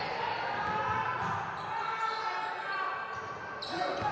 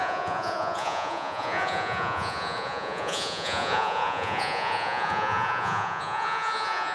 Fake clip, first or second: second